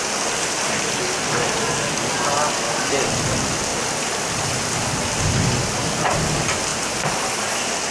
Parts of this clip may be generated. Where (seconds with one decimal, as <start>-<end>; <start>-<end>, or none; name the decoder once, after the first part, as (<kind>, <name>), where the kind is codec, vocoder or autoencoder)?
none